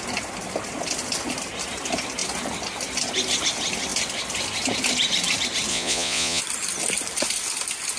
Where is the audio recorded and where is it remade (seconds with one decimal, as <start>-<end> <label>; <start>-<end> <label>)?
0.0-5.7 recorded; 5.7-6.4 remade; 6.4-8.0 recorded